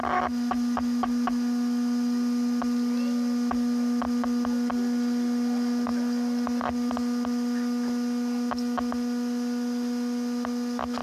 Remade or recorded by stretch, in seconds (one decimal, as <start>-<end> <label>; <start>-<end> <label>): 0.0-11.0 recorded